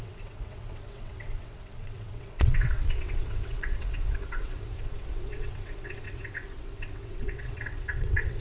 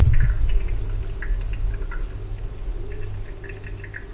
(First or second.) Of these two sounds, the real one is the second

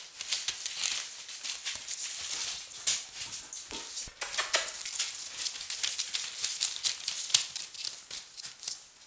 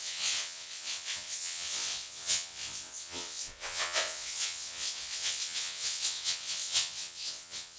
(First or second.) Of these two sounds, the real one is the first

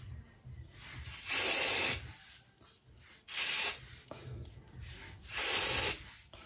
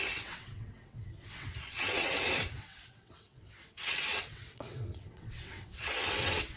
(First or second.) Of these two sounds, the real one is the first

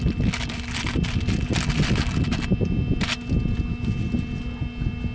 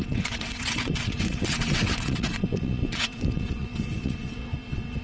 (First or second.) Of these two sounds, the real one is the first